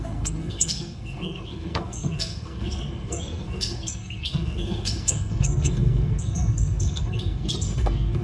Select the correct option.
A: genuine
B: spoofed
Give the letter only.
B